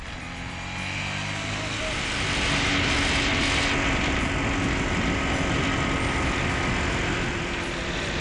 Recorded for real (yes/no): yes